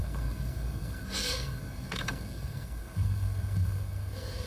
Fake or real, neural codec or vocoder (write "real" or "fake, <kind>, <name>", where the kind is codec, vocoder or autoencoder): fake, codec, SNAC